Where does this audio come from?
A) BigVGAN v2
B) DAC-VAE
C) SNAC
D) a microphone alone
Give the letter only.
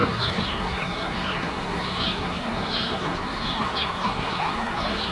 C